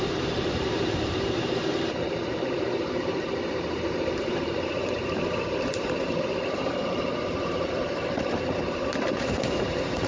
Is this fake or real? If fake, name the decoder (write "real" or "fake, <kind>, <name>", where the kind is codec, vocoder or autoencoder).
fake, vocoder, BigVGAN v2